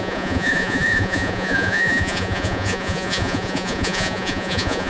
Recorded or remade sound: remade